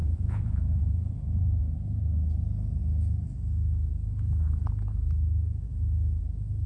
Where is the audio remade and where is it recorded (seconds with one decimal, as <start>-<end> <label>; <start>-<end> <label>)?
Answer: 0.0-1.6 remade; 1.6-6.7 recorded